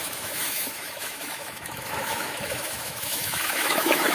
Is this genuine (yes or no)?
no